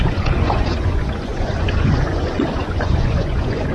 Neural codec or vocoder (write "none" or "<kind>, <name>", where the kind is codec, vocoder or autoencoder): vocoder, Vocos